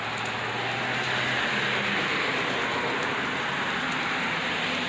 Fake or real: real